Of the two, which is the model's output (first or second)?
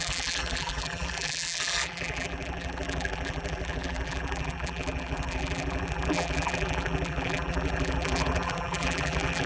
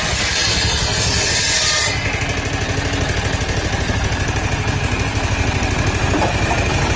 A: first